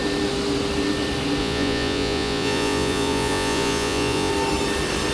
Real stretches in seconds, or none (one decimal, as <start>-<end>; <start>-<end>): 0.0-1.4; 4.3-5.1